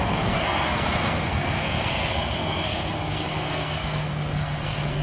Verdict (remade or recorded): remade